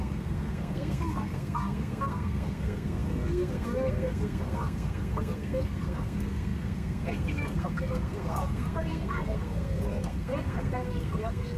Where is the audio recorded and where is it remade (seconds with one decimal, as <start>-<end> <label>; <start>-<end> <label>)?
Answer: 0.0-11.6 remade